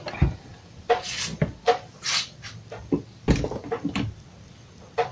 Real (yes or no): yes